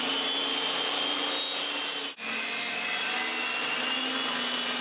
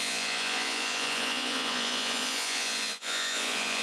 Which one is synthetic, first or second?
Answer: second